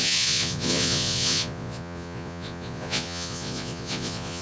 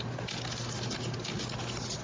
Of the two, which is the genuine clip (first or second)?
second